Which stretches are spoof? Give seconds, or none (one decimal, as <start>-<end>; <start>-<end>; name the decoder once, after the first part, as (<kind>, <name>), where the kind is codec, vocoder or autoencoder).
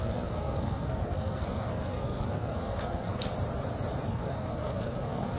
0.0-3.3 (codec, SNAC); 4.1-5.4